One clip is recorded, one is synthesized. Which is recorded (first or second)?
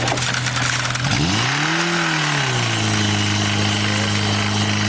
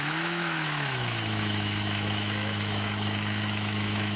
first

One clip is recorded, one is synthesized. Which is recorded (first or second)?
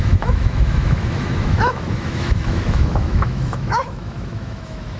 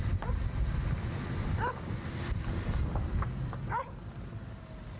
second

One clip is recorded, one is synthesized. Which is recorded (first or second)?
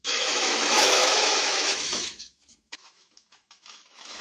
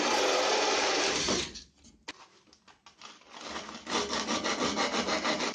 second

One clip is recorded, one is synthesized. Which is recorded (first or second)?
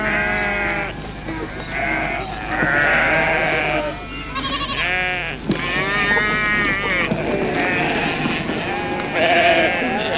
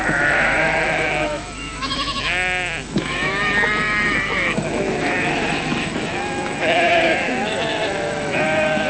first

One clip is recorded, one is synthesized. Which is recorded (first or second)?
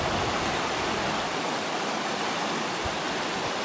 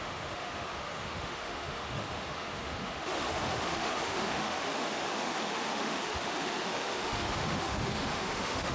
first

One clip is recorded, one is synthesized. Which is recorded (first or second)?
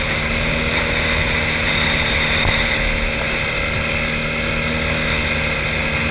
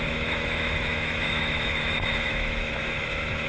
first